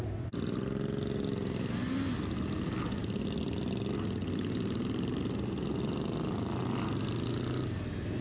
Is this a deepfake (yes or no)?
no